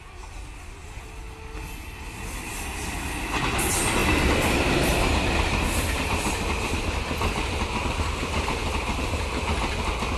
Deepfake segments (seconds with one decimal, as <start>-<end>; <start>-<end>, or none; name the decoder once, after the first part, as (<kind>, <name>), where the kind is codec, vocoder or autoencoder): none